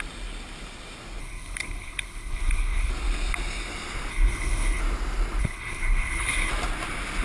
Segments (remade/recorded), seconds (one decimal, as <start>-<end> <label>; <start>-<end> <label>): 0.0-1.2 recorded; 1.2-2.9 remade; 2.9-4.1 recorded; 4.1-4.8 remade; 4.8-5.4 recorded; 5.4-6.5 remade; 6.5-7.2 recorded